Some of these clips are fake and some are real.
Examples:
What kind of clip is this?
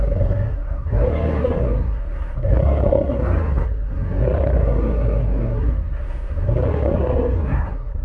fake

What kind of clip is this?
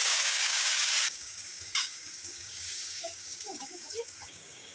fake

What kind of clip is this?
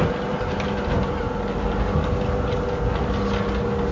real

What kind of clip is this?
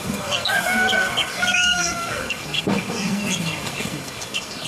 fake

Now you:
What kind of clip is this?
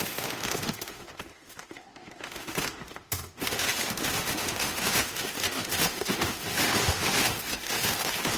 fake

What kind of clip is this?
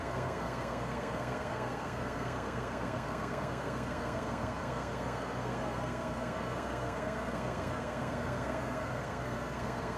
fake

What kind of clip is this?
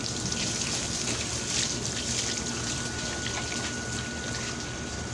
real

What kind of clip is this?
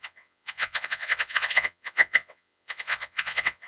fake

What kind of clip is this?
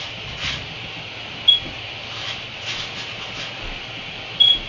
real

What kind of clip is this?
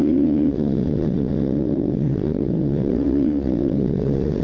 fake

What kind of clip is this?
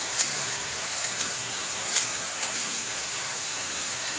fake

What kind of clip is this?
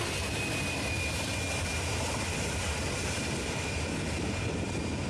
real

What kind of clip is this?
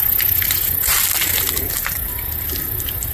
real